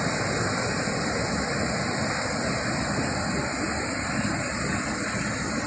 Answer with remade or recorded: recorded